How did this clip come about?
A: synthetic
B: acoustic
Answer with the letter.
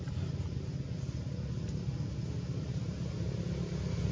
B